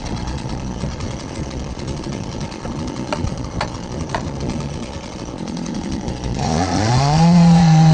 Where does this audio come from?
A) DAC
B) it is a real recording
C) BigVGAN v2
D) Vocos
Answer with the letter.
D